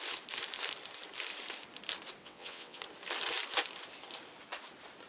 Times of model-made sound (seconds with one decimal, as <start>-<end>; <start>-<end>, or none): 2.2-2.8